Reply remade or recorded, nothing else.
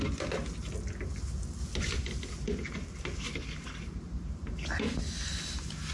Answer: recorded